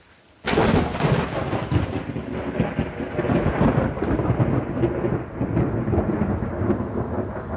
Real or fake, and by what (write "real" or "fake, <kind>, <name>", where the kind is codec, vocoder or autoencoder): real